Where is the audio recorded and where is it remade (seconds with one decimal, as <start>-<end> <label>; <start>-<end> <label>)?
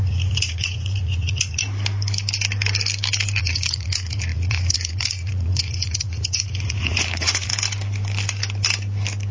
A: 0.0-1.6 remade; 1.6-3.4 recorded; 3.4-7.5 remade; 7.5-9.3 recorded